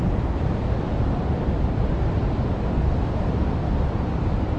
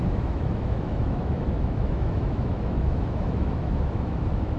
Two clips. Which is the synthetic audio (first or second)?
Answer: second